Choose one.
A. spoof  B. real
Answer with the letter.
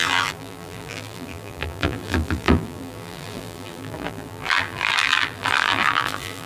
A